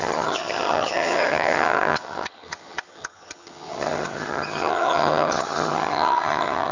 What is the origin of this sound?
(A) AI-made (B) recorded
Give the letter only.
A